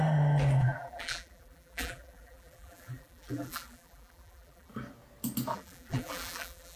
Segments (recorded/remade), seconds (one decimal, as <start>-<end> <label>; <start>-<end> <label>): 0.0-0.6 recorded; 0.6-4.7 remade; 4.7-5.5 recorded; 5.5-6.8 remade